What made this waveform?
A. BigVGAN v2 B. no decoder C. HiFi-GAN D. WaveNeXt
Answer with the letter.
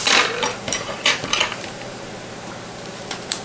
A